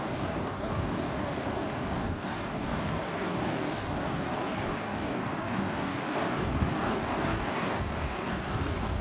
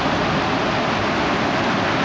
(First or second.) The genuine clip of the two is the second